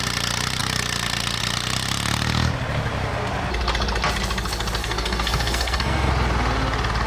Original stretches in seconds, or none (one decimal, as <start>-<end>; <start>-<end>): 0.0-4.8; 6.1-7.1